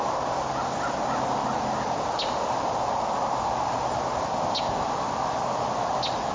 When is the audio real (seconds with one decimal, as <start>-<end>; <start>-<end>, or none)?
0.0-6.3